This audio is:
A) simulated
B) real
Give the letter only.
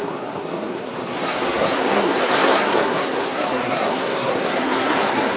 A